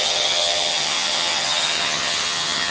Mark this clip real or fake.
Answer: fake